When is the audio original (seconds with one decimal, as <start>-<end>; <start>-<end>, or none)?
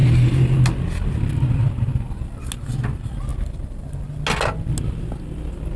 0.0-5.8